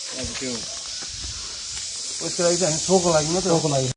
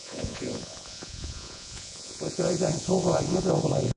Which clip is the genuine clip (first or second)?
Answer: first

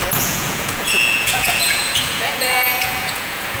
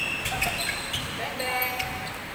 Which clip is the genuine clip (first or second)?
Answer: second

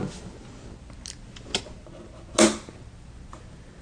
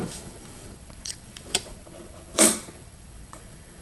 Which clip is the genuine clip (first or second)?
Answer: first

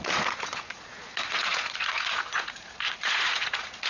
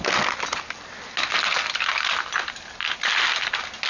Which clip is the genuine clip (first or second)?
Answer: second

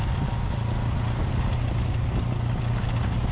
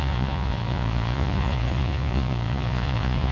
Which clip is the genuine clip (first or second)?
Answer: first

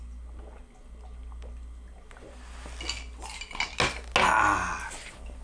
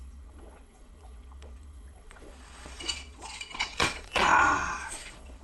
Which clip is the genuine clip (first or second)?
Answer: first